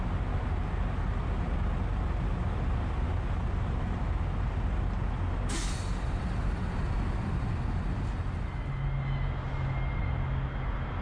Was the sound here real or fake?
real